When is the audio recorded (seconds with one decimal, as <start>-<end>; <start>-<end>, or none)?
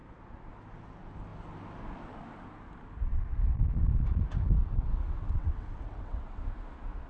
0.0-4.6; 6.4-7.1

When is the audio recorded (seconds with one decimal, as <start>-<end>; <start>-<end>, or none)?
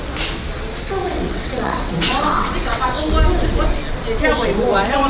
0.0-1.0; 3.0-5.1